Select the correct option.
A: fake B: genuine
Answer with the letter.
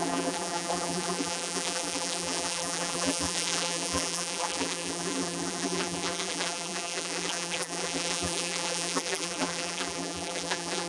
A